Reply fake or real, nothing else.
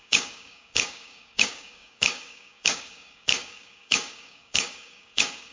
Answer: fake